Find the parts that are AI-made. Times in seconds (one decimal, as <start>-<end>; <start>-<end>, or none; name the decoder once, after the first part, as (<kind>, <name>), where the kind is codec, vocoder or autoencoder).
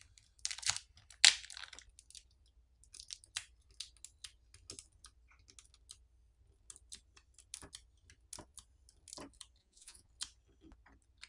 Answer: 9.6-10.1 (vocoder, Vocos)